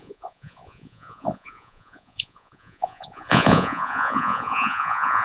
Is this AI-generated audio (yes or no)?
yes